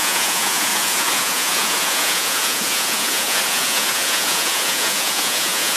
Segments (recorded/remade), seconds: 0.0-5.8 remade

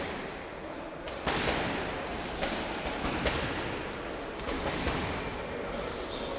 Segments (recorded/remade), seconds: 0.0-6.4 recorded

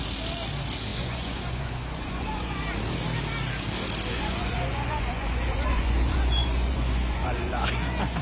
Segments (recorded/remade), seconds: 0.0-0.9 recorded; 0.9-2.6 remade; 2.6-4.1 recorded; 4.1-8.2 remade